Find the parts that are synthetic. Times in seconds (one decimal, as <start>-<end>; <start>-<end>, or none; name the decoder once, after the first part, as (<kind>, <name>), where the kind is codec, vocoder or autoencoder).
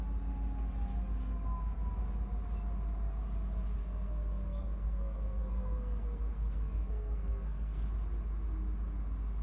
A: 3.8-7.9 (codec, SNAC)